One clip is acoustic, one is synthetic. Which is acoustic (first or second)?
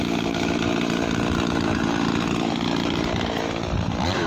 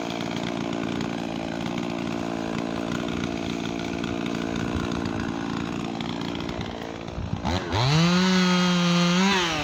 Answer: second